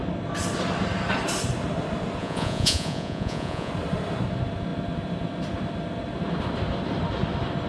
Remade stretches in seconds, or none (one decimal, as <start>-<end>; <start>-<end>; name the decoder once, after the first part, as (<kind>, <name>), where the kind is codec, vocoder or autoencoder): 2.2-3.7 (vocoder, Vocos)